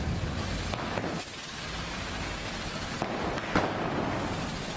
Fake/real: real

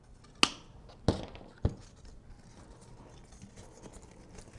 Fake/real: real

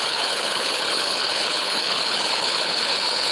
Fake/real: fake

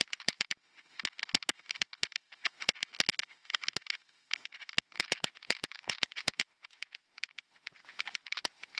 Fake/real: fake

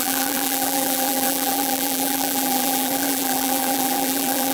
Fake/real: fake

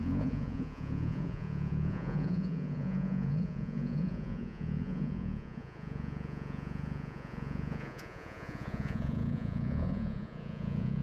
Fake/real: fake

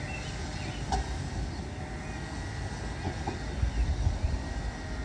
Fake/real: real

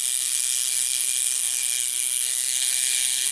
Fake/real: fake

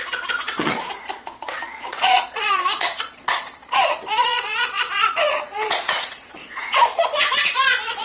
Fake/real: fake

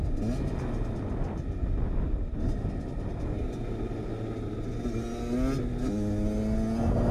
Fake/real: real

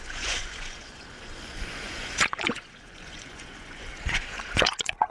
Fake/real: fake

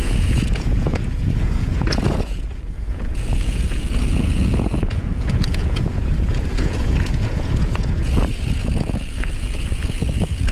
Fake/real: fake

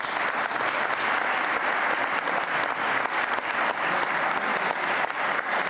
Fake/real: real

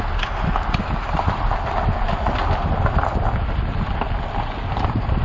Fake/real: real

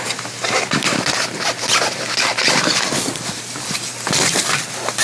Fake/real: real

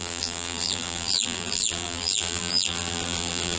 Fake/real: fake